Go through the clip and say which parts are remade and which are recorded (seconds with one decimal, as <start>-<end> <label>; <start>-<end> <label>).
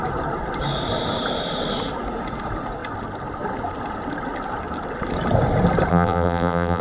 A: 0.0-5.9 recorded; 5.9-6.8 remade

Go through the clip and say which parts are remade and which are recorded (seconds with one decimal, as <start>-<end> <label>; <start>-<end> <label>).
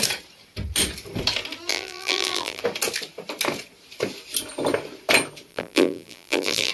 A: 0.0-1.7 recorded; 1.7-2.6 remade; 2.6-5.5 recorded; 5.5-6.7 remade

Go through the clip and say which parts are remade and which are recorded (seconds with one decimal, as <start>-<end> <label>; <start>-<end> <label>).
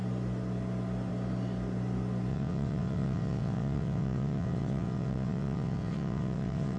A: 0.0-2.3 recorded; 2.3-6.8 remade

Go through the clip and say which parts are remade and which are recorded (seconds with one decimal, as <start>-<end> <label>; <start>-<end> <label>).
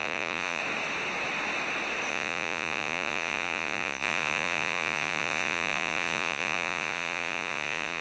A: 0.0-0.6 remade; 0.6-2.1 recorded; 2.1-8.0 remade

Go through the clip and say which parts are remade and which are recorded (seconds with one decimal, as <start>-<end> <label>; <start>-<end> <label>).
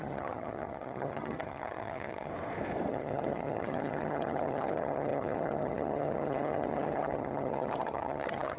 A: 0.0-2.3 remade; 2.3-2.9 recorded; 2.9-8.6 remade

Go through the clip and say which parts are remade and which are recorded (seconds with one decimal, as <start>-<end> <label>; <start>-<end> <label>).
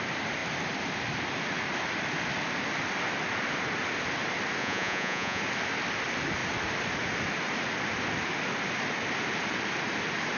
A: 0.0-4.6 recorded; 4.6-5.4 remade; 5.4-10.4 recorded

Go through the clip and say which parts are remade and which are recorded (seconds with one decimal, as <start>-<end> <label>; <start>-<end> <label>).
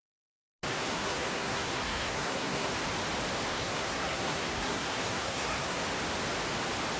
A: 0.0-0.7 recorded; 0.7-2.7 remade; 2.7-3.5 recorded; 3.5-5.8 remade; 5.8-7.0 recorded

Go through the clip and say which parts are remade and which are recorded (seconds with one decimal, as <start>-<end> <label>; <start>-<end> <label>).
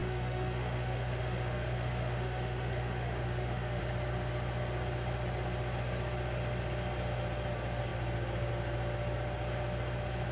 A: 0.0-3.8 remade; 3.8-10.3 recorded